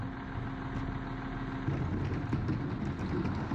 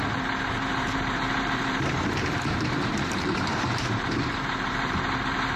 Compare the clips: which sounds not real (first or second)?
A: second